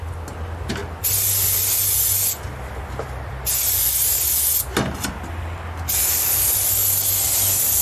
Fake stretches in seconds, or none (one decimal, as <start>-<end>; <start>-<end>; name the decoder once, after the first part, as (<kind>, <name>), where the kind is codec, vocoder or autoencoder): none